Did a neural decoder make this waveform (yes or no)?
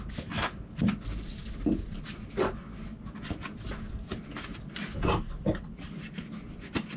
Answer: no